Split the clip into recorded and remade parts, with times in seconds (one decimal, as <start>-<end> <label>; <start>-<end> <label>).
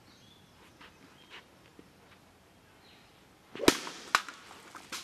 0.0-5.0 recorded